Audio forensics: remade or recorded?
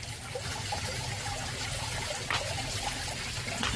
recorded